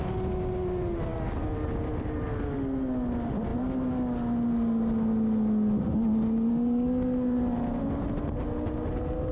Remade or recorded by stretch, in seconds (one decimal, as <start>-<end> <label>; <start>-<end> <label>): 0.0-9.3 recorded

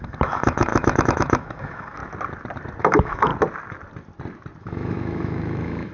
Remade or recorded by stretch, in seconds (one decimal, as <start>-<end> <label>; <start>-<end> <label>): 0.0-2.0 remade; 2.0-2.8 recorded; 2.8-3.3 remade; 3.3-4.6 recorded; 4.6-5.9 remade

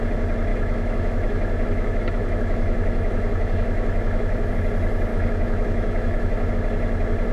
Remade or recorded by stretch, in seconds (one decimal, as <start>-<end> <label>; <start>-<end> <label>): 0.0-0.5 recorded; 0.5-4.5 remade; 4.5-5.1 recorded; 5.1-6.5 remade; 6.5-7.3 recorded

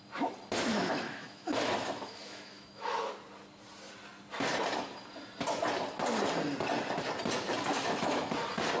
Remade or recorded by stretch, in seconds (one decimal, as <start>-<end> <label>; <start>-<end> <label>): 0.0-0.7 recorded; 0.7-3.1 remade; 3.1-7.7 recorded; 7.7-8.3 remade; 8.3-8.8 recorded

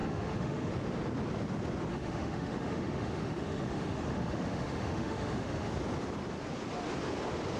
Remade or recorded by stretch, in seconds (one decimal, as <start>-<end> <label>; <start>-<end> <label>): 0.0-0.7 remade; 0.7-1.9 recorded; 1.9-5.7 remade; 5.7-7.6 recorded